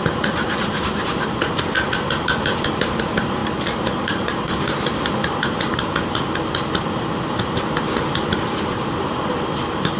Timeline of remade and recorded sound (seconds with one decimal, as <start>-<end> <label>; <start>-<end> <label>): 0.0-10.0 recorded